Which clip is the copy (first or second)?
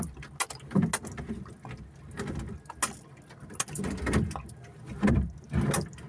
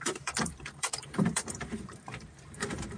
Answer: second